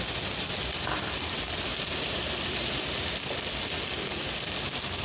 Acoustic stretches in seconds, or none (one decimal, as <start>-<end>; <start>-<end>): 0.0-1.7; 3.1-5.0